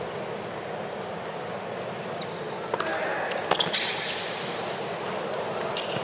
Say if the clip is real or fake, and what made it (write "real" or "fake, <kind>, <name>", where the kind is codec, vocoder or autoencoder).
real